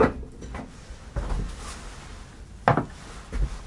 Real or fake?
real